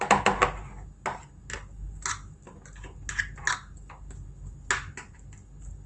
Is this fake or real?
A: real